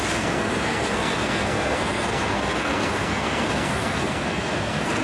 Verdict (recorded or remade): remade